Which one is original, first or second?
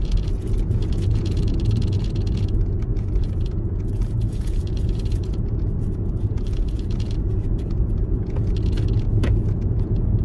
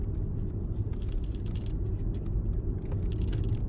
second